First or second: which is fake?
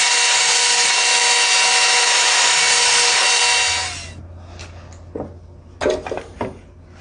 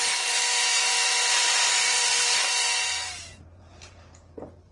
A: second